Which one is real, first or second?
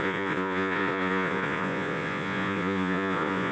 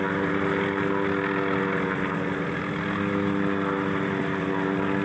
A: second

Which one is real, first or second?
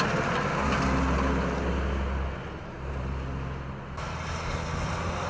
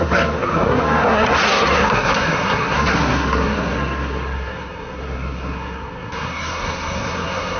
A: first